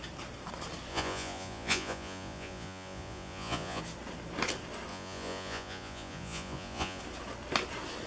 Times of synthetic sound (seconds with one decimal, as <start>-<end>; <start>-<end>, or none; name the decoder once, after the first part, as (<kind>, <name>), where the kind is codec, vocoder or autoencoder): 0.9-3.8 (vocoder, Vocos); 4.9-7.0